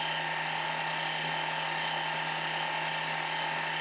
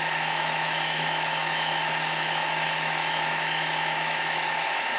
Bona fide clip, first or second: first